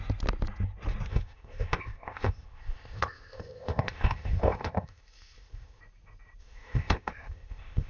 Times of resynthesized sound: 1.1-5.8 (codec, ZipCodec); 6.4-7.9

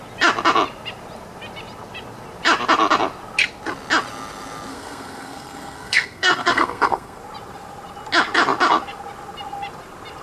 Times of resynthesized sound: 4.7-7.2 (codec, SNAC)

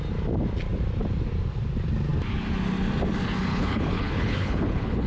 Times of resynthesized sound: 3.5-5.1 (codec, HILCodec)

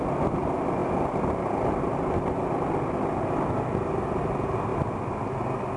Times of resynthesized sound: none